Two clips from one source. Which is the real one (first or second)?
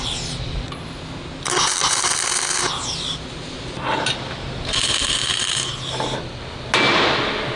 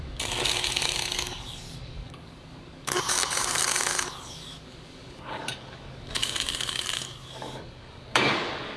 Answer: first